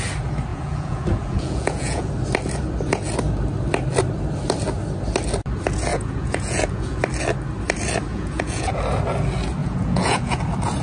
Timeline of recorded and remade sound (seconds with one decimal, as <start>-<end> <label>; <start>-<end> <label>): 0.0-0.5 recorded; 0.5-2.1 remade; 2.1-5.9 recorded; 5.9-7.0 remade; 7.0-8.1 recorded; 8.1-8.7 remade; 8.7-9.6 recorded; 9.6-10.4 remade; 10.4-10.8 recorded